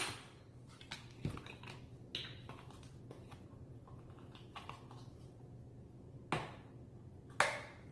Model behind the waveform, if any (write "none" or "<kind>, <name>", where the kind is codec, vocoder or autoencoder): none